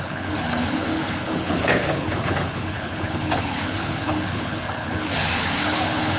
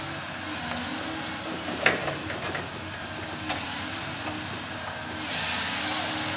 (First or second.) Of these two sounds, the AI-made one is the first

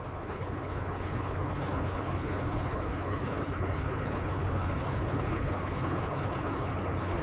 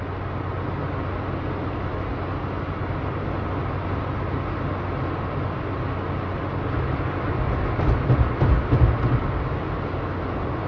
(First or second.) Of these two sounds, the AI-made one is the first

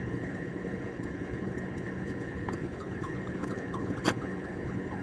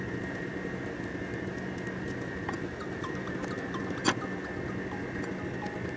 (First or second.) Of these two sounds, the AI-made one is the first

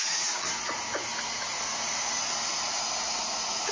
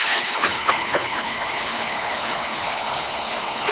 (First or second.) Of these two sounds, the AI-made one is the second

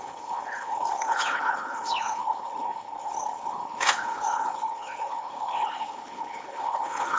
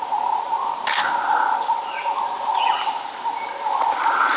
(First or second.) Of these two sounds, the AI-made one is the first